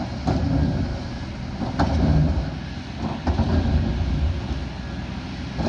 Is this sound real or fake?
real